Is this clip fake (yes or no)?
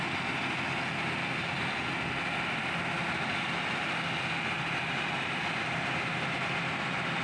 no